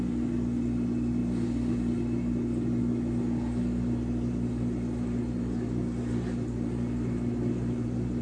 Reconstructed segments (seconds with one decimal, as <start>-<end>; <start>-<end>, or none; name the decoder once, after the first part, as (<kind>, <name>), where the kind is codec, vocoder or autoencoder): none